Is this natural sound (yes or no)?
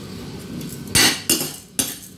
yes